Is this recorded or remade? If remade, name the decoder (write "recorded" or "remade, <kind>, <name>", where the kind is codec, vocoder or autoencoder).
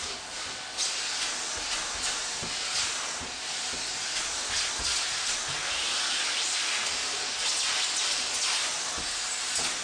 recorded